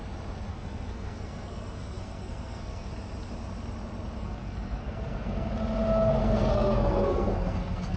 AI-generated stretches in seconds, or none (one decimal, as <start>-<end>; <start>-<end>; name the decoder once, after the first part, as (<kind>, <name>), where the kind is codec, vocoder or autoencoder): 0.5-2.9 (codec, SNAC); 4.2-5.5; 6.2-8.0